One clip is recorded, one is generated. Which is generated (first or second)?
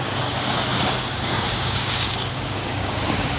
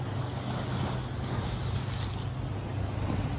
first